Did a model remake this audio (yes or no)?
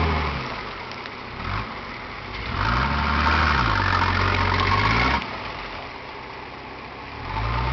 no